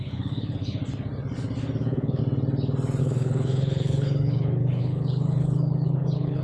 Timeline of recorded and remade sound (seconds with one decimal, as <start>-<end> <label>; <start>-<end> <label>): 0.0-0.8 remade; 0.8-1.8 recorded; 1.8-2.2 remade; 2.2-3.0 recorded; 3.0-6.4 remade